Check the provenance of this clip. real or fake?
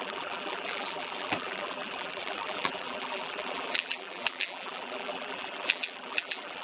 fake